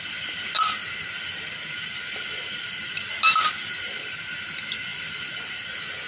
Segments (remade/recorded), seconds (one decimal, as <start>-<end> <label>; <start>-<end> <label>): 0.0-6.1 recorded